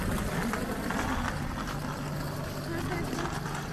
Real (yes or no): yes